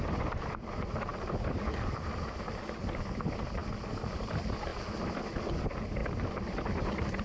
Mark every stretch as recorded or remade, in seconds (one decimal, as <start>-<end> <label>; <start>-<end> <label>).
0.0-1.1 remade; 1.1-1.6 recorded; 1.6-3.6 remade; 3.6-4.3 recorded; 4.3-4.7 remade; 4.7-5.6 recorded; 5.6-7.2 remade

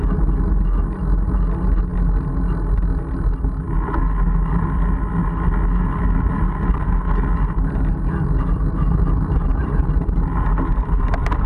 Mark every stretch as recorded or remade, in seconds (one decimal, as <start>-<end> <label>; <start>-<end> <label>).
0.0-11.5 recorded

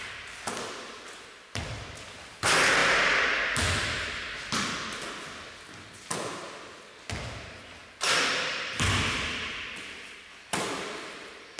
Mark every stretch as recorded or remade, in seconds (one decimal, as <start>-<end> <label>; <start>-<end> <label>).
0.0-2.8 remade; 2.8-7.0 recorded; 7.0-11.6 remade

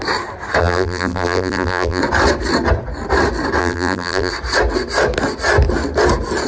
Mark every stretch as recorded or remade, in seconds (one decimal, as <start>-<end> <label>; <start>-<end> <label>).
0.0-0.6 recorded; 0.6-2.0 remade; 2.0-3.6 recorded; 3.6-4.3 remade; 4.3-6.5 recorded

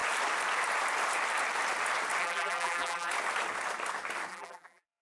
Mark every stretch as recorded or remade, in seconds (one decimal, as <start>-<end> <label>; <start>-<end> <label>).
0.0-2.2 recorded; 2.2-3.1 remade; 3.1-4.3 recorded; 4.3-5.0 remade

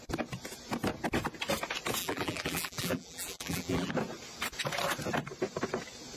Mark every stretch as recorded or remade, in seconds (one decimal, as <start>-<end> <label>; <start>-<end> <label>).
0.0-2.0 recorded; 2.0-3.9 remade; 3.9-6.2 recorded

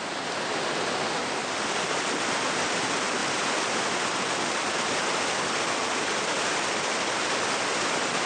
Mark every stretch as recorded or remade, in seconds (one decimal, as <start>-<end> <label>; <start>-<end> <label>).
0.0-3.2 recorded; 3.2-3.8 remade; 3.8-8.3 recorded